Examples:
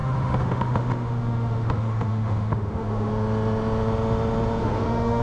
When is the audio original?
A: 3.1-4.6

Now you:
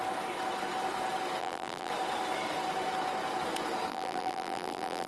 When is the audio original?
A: 0.0-1.4; 1.9-3.9

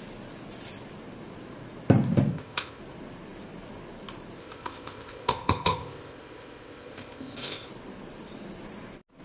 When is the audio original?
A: 0.0-2.3; 2.8-4.4; 7.7-9.2

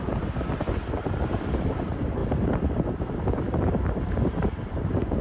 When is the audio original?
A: 2.2-3.0

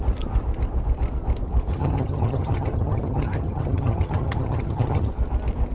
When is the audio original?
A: 0.0-1.7; 5.1-5.7

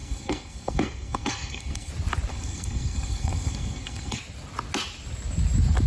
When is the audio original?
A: 1.9-2.3; 4.2-5.9